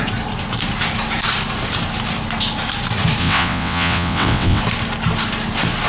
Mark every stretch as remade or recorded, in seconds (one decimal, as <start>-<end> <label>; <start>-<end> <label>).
0.0-3.2 recorded; 3.2-4.6 remade; 4.6-5.9 recorded